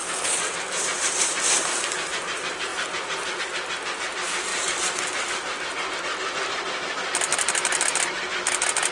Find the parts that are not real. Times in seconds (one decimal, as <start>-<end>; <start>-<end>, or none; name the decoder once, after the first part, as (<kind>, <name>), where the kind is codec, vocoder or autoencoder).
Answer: 0.0-1.9 (vocoder, BigVGAN v2); 2.7-3.4